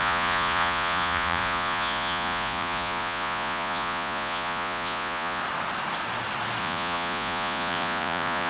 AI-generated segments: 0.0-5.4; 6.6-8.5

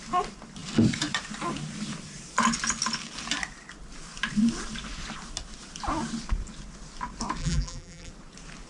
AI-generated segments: 7.4-8.1

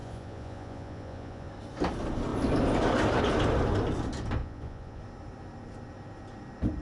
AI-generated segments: 0.0-1.5; 4.4-5.0

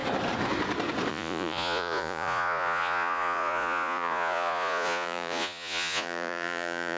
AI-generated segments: 1.1-7.0